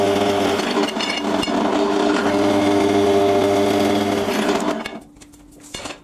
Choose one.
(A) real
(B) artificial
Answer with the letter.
A